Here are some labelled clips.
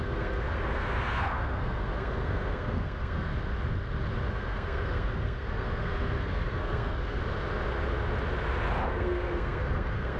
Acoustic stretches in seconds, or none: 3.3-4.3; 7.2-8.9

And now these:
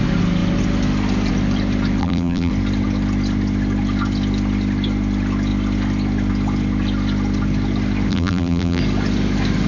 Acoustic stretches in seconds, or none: 0.0-2.0; 2.5-8.1; 8.8-9.7